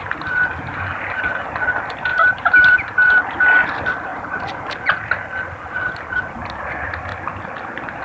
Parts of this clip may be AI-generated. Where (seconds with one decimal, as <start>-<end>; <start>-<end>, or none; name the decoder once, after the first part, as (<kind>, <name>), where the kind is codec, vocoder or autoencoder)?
2.1-3.2 (vocoder, BigVGAN v2); 4.1-4.8